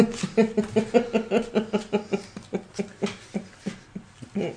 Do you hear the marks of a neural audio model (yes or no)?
no